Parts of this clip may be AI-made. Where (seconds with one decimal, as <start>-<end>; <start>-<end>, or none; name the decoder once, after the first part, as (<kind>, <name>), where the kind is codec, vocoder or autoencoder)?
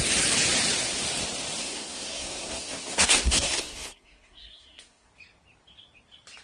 1.6-5.1 (codec, SNAC)